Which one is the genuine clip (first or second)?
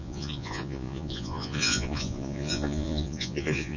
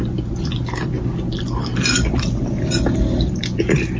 second